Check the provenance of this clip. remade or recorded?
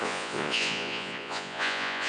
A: remade